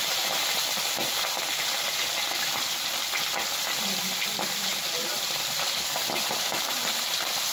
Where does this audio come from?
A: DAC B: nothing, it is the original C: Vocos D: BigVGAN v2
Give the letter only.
D